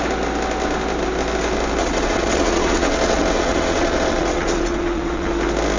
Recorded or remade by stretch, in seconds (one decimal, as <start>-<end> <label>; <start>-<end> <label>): 0.0-1.8 recorded; 1.8-5.3 remade; 5.3-5.8 recorded